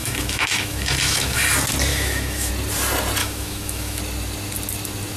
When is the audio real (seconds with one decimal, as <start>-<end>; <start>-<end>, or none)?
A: 1.4-1.9; 2.5-3.2; 4.0-5.2